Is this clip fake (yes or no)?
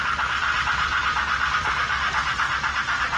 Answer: no